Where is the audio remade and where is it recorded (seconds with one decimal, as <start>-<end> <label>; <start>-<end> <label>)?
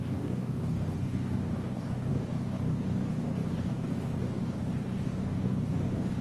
0.0-6.2 remade